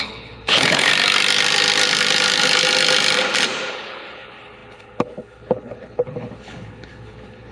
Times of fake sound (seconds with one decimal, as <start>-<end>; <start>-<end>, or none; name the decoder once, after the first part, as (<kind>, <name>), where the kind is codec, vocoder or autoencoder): 0.0-0.9 (codec, HILCodec); 3.7-7.5

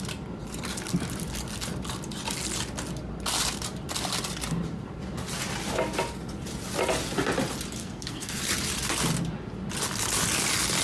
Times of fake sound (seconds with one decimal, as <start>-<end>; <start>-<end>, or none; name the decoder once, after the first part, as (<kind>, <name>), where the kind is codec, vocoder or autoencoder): 7.8-8.4 (codec, SNAC)

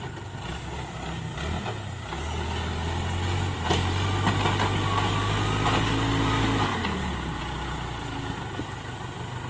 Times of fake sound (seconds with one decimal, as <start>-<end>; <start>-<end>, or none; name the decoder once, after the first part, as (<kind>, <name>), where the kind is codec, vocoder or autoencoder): none

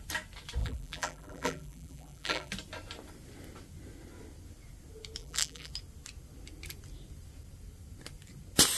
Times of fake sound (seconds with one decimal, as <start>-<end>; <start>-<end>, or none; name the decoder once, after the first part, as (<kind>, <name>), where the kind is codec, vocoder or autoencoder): 0.6-2.5 (vocoder, BigVGAN v2); 5.2-5.7

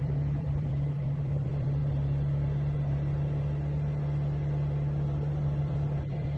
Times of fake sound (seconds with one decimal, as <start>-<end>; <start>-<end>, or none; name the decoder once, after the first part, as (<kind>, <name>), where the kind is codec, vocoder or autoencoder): 0.0-1.8 (vocoder, BigVGAN v2); 5.6-6.4